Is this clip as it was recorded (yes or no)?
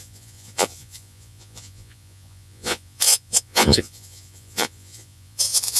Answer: no